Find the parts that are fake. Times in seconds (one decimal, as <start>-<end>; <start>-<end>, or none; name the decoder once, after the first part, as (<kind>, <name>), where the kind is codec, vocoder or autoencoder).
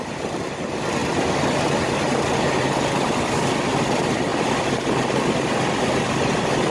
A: none